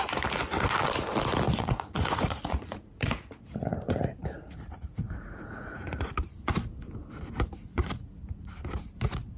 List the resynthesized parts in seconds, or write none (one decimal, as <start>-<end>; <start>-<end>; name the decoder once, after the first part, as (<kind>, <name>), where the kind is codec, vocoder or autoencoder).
1.5-6.1 (vocoder, Vocos); 7.7-8.5